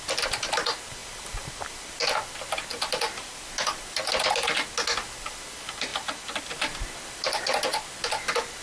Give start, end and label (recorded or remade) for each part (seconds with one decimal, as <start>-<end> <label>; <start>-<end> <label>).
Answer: 0.0-1.0 recorded; 1.0-1.8 remade; 1.8-2.7 recorded; 2.7-4.1 remade; 4.1-8.6 recorded